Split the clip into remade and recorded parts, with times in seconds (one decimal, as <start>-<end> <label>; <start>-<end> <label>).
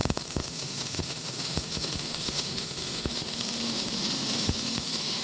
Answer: 0.0-5.2 remade